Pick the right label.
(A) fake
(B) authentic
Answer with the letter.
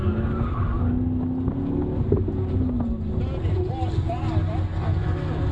B